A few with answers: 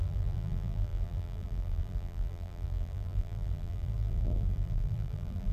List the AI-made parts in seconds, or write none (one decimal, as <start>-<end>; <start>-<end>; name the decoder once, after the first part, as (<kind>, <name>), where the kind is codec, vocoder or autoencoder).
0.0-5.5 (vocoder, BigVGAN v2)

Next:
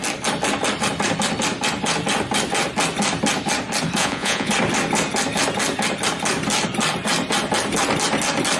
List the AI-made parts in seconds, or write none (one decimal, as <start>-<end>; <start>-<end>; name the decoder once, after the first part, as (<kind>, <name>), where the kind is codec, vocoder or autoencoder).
4.0-4.5 (vocoder, Vocos)

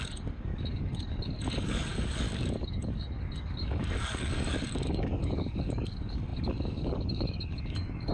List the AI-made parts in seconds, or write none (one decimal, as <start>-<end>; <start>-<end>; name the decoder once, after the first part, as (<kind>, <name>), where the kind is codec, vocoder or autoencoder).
0.0-8.1 (codec, DAC)

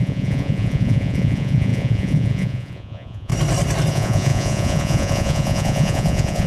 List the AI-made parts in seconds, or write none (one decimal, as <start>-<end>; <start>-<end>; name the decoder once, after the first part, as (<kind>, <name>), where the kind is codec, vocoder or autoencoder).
0.0-3.3 (vocoder, Vocos); 3.9-6.5